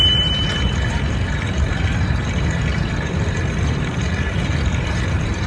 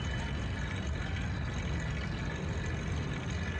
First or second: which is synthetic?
first